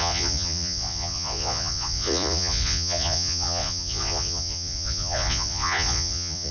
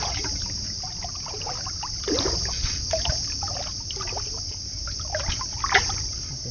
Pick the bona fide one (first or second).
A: second